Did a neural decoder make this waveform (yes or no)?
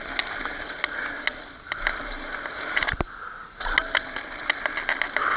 no